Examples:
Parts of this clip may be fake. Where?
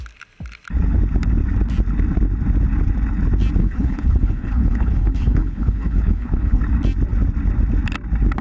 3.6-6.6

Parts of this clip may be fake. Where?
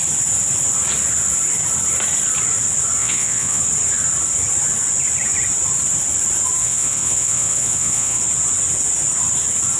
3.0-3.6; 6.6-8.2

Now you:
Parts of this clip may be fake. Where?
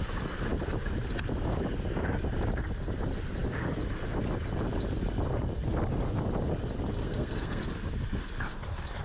7.0-7.6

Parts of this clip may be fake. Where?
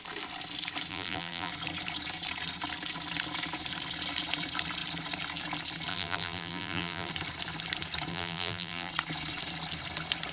0.9-1.5; 5.9-7.1; 8.1-8.9